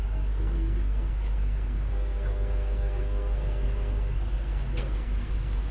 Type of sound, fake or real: fake